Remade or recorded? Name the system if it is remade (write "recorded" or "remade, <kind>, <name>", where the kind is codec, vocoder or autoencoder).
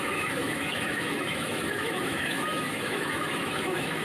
remade, autoencoder, DAC-VAE